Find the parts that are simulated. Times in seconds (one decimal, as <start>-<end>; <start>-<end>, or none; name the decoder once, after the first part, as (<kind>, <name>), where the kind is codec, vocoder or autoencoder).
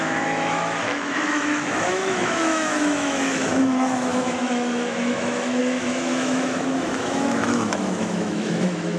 0.0-9.0 (autoencoder, DAC-VAE)